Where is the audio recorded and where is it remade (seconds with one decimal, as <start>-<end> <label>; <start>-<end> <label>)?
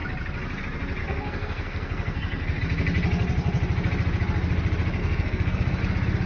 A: 0.0-1.0 recorded; 1.0-2.6 remade; 2.6-5.0 recorded; 5.0-5.8 remade; 5.8-6.3 recorded